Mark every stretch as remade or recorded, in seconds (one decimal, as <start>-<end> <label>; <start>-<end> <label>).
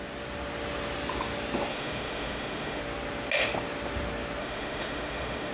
0.0-1.7 recorded; 1.7-2.8 remade; 2.8-4.4 recorded; 4.4-5.5 remade